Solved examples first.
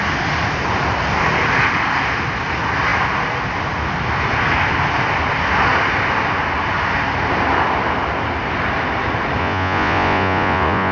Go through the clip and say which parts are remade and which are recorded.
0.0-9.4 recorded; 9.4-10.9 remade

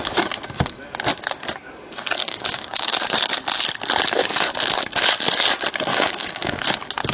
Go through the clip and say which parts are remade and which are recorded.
0.0-2.2 recorded; 2.2-2.9 remade; 2.9-5.9 recorded; 5.9-6.6 remade; 6.6-7.1 recorded

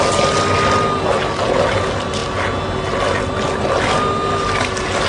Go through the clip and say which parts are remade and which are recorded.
0.0-5.1 recorded